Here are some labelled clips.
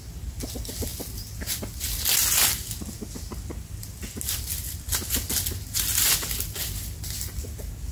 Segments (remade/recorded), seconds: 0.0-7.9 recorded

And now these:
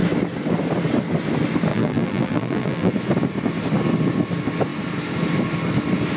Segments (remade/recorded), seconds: 0.0-1.7 recorded; 1.7-2.9 remade; 2.9-6.2 recorded

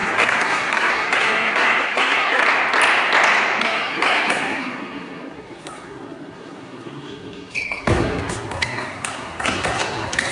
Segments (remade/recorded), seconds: 0.0-2.4 remade; 2.4-3.6 recorded; 3.6-10.3 remade

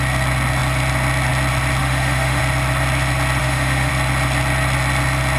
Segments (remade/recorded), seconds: 0.0-1.8 recorded; 1.8-2.4 remade; 2.4-3.4 recorded; 3.4-3.9 remade; 3.9-5.4 recorded

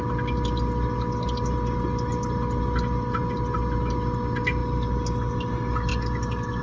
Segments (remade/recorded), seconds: 0.0-6.6 recorded

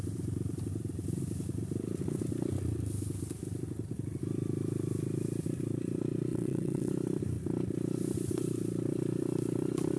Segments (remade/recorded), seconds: 0.0-6.3 recorded; 6.3-6.9 remade; 6.9-10.0 recorded

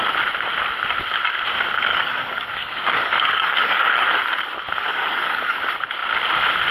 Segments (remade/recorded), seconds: 0.0-1.9 recorded; 1.9-4.2 remade; 4.2-4.9 recorded; 4.9-5.6 remade; 5.6-6.7 recorded

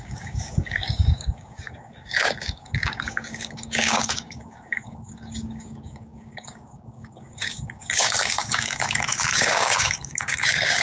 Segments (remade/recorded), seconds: 0.0-10.8 remade